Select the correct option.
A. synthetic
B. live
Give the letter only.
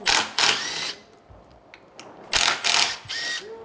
B